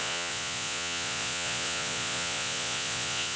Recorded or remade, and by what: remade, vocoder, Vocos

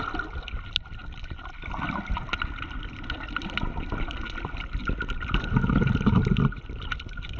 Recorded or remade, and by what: recorded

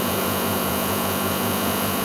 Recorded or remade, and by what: remade, vocoder, Vocos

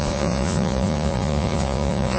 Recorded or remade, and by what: remade, vocoder, Vocos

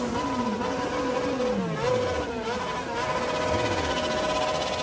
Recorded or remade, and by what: recorded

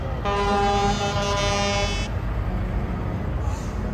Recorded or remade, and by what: recorded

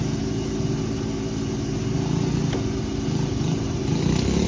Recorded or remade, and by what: recorded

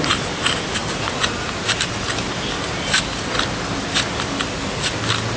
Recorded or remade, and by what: recorded